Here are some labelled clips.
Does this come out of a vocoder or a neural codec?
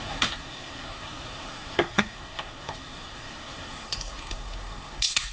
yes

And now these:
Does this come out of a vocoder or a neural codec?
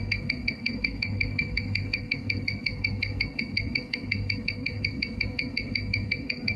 yes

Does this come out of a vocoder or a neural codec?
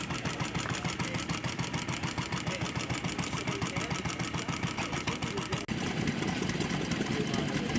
no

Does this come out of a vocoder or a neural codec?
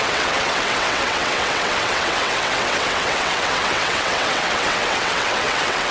yes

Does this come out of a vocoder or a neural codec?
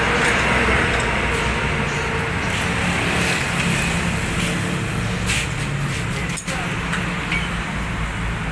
no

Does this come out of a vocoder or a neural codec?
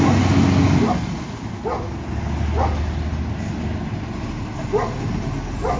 no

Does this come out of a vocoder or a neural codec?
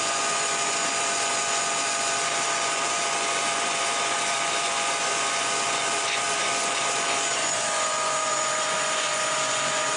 yes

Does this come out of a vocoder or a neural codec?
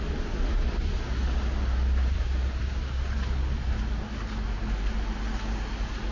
no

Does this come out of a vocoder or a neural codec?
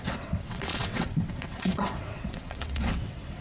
yes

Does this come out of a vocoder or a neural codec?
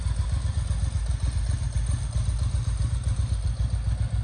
no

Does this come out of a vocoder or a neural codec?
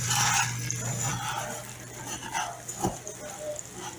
no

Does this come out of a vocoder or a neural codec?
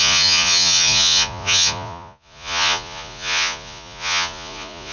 yes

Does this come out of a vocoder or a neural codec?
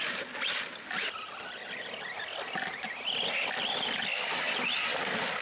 no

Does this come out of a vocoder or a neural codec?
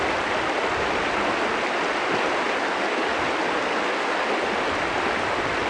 no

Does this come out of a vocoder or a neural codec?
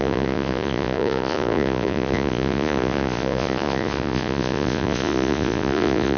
yes